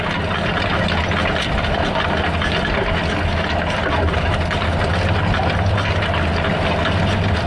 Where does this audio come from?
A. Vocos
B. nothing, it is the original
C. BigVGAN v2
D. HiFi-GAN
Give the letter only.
B